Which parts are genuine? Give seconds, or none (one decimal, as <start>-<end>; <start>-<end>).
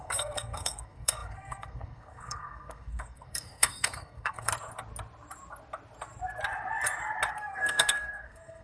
4.5-7.3